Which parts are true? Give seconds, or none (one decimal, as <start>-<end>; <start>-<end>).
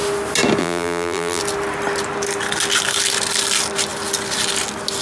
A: 0.0-0.6; 1.4-5.0